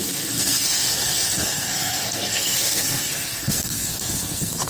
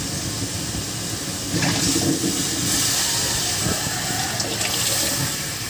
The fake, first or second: first